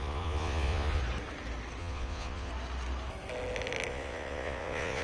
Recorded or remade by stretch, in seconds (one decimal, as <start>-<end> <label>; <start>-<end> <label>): 0.0-1.0 remade; 1.0-1.8 recorded; 1.8-2.5 remade; 2.5-3.9 recorded; 3.9-5.0 remade